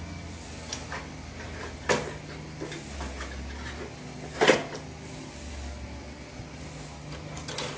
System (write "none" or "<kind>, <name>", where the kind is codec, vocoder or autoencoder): none